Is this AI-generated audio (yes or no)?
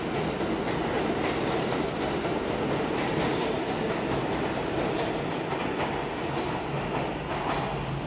no